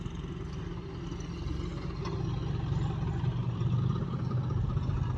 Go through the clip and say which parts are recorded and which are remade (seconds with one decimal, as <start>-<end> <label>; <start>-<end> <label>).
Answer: 0.0-5.2 recorded